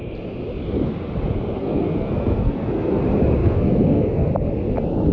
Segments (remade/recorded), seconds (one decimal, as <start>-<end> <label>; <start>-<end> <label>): 0.0-1.6 recorded; 1.6-3.0 remade; 3.0-3.4 recorded; 3.4-4.3 remade; 4.3-5.1 recorded